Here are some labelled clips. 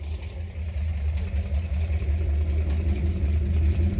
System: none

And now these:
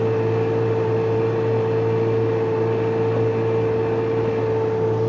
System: none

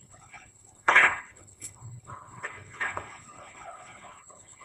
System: codec, HILCodec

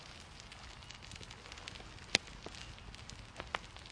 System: none